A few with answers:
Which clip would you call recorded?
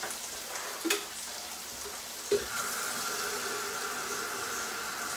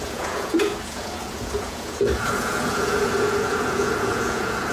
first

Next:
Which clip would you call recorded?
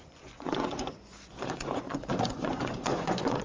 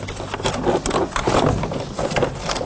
second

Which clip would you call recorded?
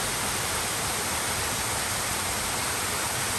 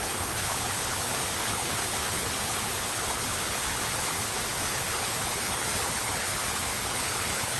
first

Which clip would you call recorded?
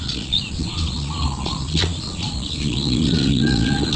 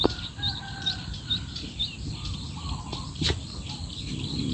second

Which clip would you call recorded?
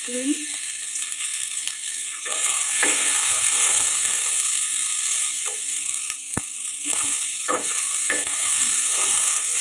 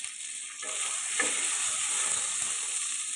second